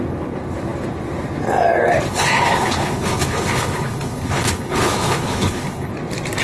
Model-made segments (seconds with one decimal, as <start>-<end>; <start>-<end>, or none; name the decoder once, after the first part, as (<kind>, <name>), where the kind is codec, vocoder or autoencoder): 2.1-5.9 (codec, HILCodec)